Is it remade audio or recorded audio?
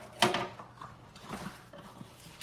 recorded